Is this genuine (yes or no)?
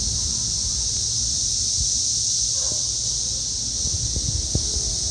yes